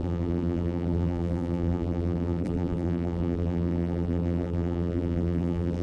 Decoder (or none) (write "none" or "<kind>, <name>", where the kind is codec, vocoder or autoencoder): vocoder, BigVGAN v2